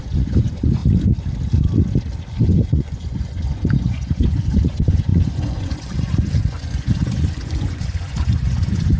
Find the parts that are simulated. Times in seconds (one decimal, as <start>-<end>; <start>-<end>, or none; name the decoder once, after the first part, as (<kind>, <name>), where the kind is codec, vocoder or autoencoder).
0.0-0.8 (vocoder, Vocos); 2.2-9.0